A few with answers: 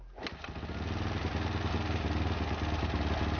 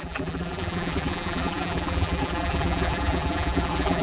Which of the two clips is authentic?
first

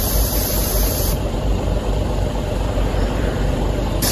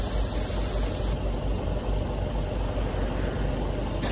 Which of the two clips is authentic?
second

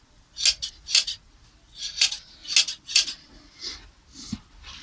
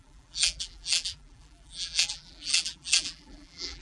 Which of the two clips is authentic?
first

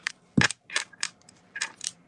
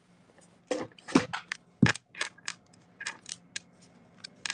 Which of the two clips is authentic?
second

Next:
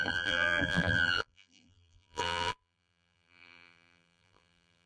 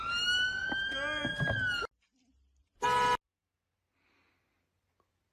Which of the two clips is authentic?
second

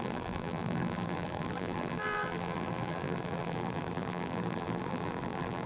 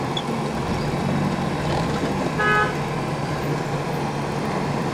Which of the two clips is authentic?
second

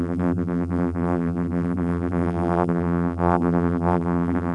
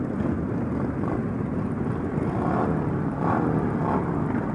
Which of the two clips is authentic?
second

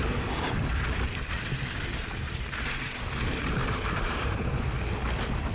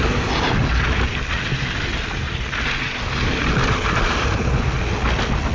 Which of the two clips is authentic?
second